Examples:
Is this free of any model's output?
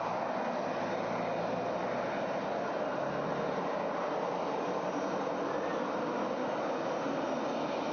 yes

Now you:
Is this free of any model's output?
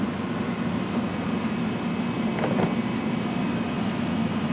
yes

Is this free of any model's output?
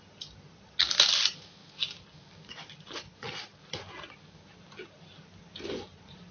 yes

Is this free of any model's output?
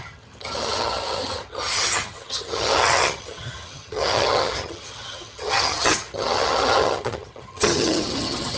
no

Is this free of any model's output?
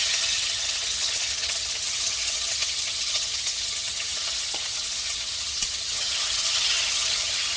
no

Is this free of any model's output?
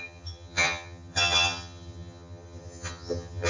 no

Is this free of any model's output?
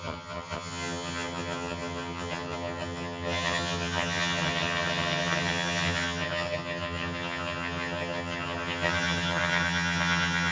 no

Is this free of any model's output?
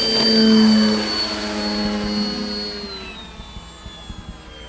yes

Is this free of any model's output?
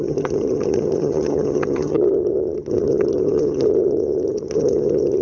no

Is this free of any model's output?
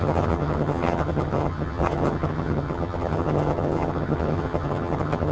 no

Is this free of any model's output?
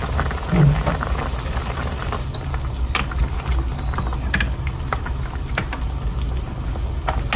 yes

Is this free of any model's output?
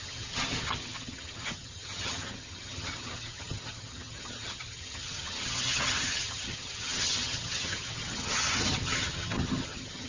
no